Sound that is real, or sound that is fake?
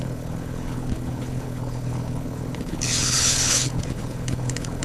fake